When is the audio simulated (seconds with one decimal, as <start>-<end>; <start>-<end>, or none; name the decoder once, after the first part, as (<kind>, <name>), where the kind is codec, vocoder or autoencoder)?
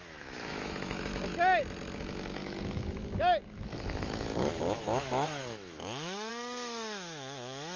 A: 0.0-1.3 (autoencoder, DAC-VAE); 2.0-7.8